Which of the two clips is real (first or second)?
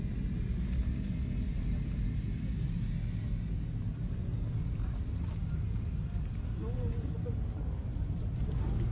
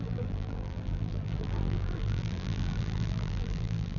first